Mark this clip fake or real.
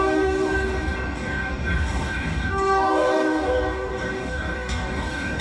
fake